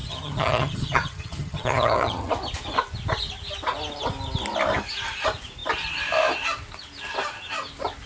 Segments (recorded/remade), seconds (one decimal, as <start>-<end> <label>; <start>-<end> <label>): 0.0-2.3 remade; 2.3-8.1 recorded